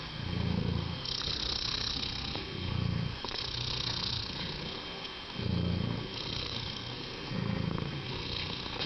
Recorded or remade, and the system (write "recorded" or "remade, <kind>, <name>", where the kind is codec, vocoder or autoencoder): remade, codec, SNAC